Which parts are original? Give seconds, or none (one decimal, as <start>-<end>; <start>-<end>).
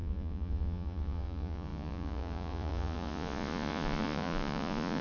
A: none